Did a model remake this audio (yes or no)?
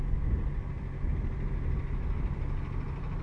no